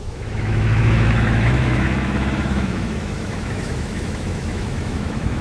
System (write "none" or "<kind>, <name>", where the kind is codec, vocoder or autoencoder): autoencoder, DAC-VAE